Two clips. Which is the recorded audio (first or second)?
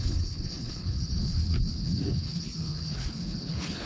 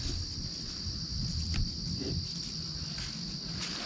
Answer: second